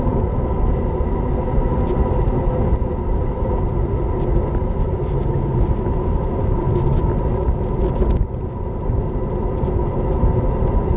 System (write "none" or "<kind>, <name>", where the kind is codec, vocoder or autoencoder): none